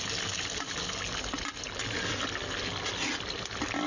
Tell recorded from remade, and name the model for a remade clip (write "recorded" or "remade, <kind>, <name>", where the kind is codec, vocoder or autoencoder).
recorded